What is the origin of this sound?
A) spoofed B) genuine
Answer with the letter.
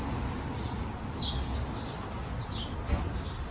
B